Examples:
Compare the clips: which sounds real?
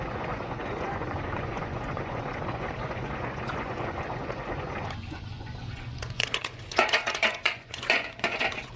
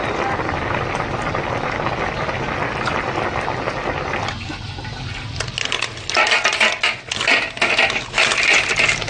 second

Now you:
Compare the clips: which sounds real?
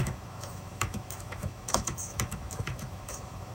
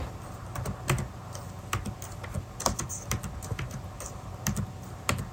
second